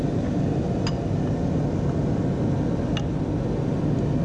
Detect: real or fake real